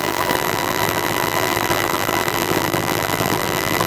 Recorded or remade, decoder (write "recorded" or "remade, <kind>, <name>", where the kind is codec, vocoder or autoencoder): remade, vocoder, BigVGAN v2